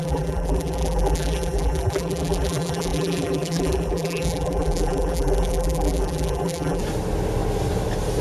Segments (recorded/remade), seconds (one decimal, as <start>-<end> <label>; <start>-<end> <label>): 0.0-6.8 remade; 6.8-8.2 recorded